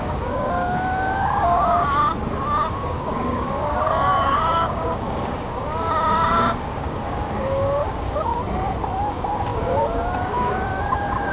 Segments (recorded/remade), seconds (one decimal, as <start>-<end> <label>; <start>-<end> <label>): 0.0-2.0 remade; 2.0-2.7 recorded; 2.7-8.3 remade; 8.3-9.1 recorded; 9.1-11.3 remade